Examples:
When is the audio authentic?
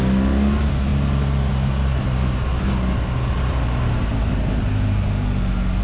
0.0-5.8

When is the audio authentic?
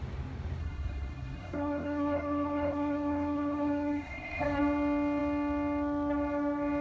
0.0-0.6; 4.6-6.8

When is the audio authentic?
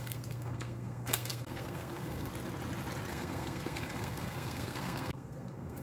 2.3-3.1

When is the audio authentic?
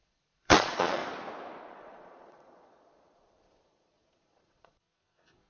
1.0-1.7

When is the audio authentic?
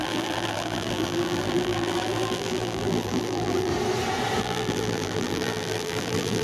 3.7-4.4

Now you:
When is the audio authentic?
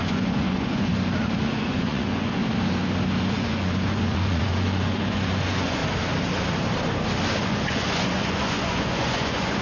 0.9-1.4; 2.4-3.3; 5.8-7.4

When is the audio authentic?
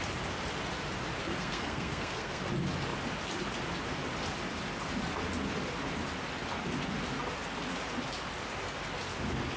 0.0-1.2; 2.5-9.6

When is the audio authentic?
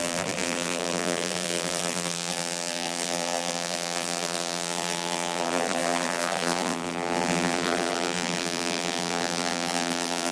none